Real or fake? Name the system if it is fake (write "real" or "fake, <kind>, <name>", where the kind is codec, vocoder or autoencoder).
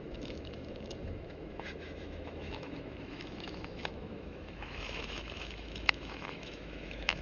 fake, autoencoder, DAC-VAE